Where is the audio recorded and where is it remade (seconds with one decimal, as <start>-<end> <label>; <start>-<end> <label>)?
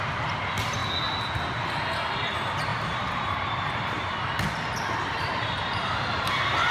0.0-2.7 recorded; 2.7-4.0 remade; 4.0-5.1 recorded; 5.1-6.7 remade